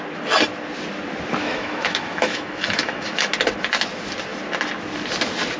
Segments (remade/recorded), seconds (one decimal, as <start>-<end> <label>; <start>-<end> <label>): 0.0-1.4 recorded; 1.4-3.3 remade; 3.3-5.6 recorded